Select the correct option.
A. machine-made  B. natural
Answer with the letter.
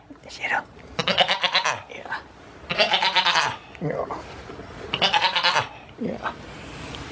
A